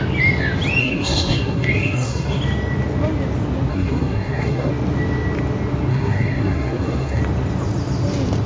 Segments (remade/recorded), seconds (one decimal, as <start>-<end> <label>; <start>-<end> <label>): 0.0-0.8 recorded; 0.8-2.4 remade; 2.4-3.7 recorded; 3.7-4.7 remade; 4.7-5.9 recorded; 5.9-7.2 remade; 7.2-8.5 recorded